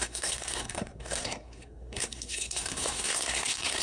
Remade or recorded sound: remade